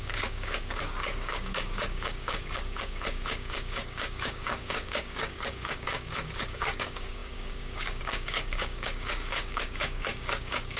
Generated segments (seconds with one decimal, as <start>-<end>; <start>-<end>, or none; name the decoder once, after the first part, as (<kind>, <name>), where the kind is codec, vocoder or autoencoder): 0.0-10.8 (codec, DAC)

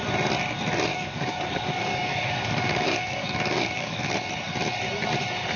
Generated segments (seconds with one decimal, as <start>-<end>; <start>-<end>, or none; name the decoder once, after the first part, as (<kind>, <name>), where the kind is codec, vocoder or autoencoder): 0.9-4.3 (codec, DAC)

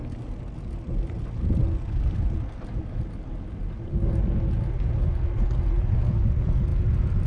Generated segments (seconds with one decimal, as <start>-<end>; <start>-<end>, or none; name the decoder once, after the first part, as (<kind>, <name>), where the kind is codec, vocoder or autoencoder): none